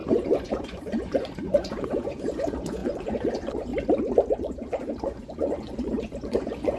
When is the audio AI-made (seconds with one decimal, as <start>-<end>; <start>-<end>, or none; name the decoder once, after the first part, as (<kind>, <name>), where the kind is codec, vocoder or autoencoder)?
0.0-3.7 (vocoder, Vocos); 4.3-6.8